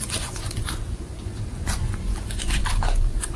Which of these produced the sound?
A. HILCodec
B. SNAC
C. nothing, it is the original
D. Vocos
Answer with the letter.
D